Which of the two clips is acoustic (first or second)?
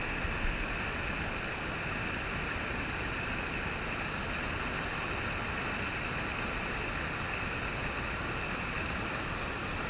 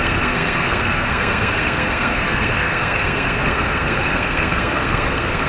first